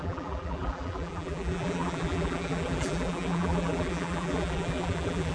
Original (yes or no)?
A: no